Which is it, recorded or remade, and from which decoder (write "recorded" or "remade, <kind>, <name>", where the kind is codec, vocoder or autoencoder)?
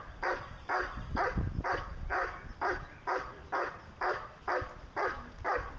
recorded